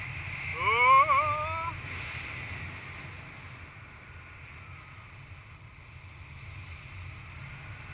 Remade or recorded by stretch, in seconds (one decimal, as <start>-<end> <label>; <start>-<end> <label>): 0.0-7.9 recorded